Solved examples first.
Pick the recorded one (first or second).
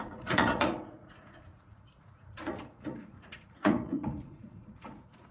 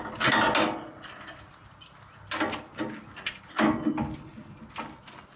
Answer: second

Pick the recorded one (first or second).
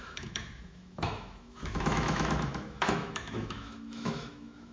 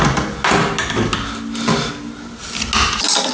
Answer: second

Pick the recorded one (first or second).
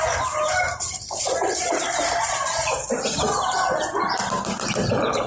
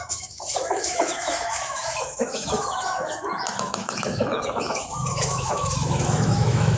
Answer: first